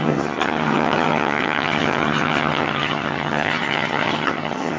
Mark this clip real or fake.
fake